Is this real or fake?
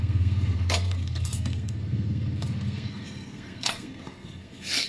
fake